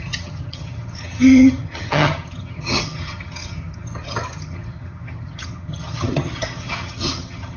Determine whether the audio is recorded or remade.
remade